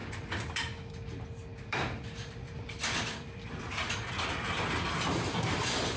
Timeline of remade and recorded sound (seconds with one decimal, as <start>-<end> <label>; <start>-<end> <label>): 0.0-1.5 recorded; 1.5-4.1 remade; 4.1-6.0 recorded